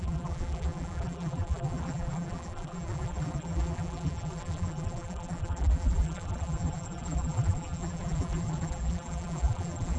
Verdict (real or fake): fake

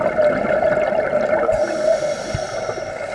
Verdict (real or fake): real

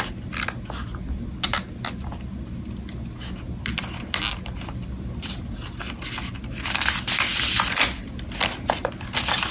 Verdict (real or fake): real